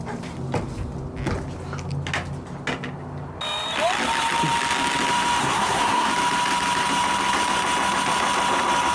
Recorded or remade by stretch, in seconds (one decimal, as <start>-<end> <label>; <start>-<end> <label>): 0.0-5.4 recorded; 5.4-6.1 remade; 6.1-8.9 recorded